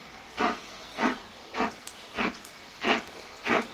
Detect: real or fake fake